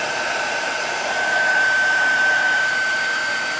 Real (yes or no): no